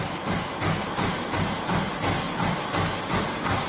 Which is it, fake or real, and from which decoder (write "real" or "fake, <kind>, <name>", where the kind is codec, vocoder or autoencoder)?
real